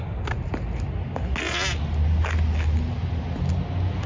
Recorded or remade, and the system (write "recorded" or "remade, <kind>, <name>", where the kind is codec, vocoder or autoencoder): recorded